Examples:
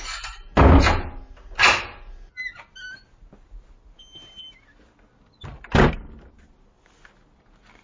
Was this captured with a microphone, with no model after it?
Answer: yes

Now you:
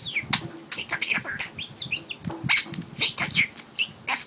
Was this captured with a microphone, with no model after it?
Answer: yes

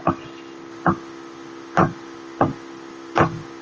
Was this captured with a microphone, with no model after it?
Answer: yes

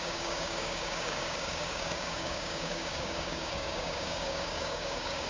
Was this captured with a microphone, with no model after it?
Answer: no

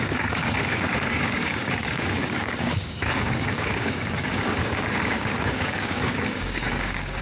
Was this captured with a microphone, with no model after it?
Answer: no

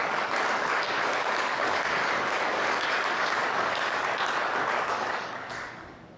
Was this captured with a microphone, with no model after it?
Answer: no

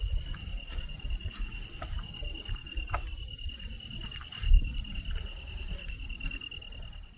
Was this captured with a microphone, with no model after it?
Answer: yes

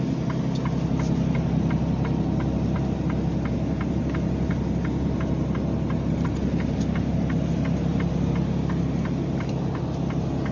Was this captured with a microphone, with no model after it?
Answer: yes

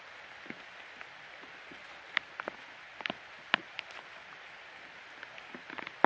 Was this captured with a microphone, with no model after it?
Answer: yes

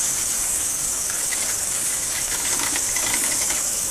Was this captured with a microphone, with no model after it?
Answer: no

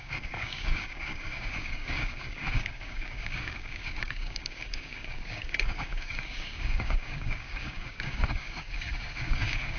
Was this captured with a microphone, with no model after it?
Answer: no